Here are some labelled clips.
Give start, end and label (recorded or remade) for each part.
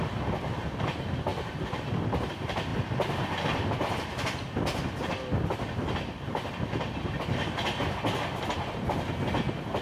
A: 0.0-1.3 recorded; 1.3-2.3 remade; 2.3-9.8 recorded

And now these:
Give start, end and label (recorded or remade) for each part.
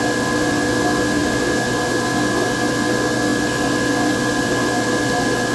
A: 0.0-5.5 recorded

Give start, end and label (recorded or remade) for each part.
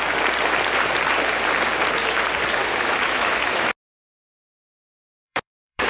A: 0.0-2.6 recorded; 2.6-3.7 remade; 3.7-4.3 recorded; 4.3-5.9 remade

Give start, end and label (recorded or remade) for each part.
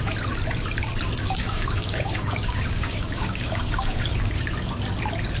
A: 0.0-1.2 recorded; 1.2-4.4 remade; 4.4-5.4 recorded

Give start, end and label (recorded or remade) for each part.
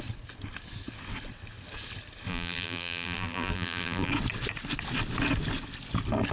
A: 0.0-2.3 recorded; 2.3-4.1 remade; 4.1-6.3 recorded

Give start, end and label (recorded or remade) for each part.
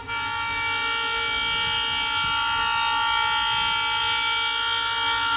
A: 0.0-5.4 recorded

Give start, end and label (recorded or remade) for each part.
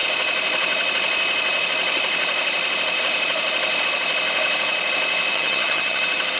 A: 0.0-5.3 recorded; 5.3-6.0 remade; 6.0-6.4 recorded